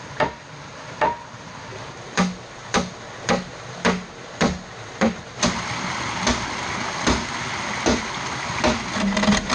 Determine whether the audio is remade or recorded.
recorded